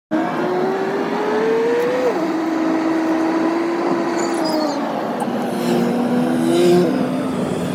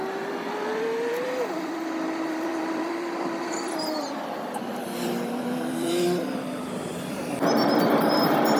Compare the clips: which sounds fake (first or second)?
second